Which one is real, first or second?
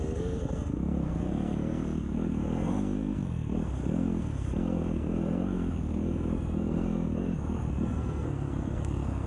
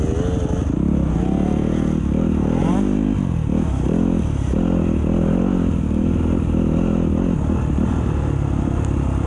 second